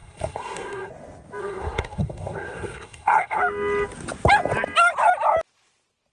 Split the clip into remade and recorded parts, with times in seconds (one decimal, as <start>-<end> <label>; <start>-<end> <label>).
0.0-0.9 remade; 0.9-1.4 recorded; 1.4-3.4 remade; 3.4-6.1 recorded